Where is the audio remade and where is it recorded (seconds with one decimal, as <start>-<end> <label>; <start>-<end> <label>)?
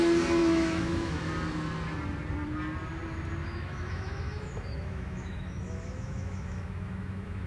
0.0-0.4 recorded; 0.4-1.3 remade; 1.3-3.4 recorded; 3.4-7.5 remade